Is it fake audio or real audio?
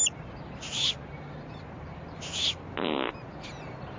real